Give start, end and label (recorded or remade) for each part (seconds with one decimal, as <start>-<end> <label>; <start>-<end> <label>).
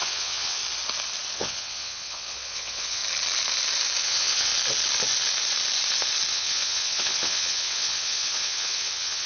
0.0-0.6 remade; 0.6-1.3 recorded; 1.3-3.0 remade; 3.0-4.0 recorded; 4.0-4.5 remade; 4.5-6.3 recorded; 6.3-9.3 remade